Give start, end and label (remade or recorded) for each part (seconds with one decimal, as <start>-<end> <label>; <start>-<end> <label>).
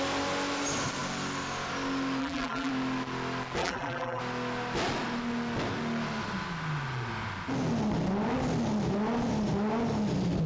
0.0-2.2 recorded; 2.2-2.7 remade; 2.7-3.6 recorded; 3.6-4.2 remade; 4.2-10.5 recorded